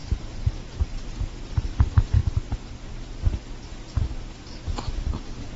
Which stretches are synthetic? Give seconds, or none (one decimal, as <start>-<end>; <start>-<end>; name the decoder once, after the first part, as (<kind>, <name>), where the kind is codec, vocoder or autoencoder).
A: none